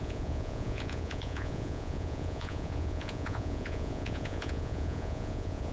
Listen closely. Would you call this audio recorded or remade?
remade